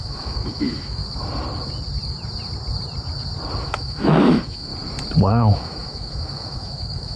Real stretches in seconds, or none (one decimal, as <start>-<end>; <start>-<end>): 1.0-3.6; 4.7-5.2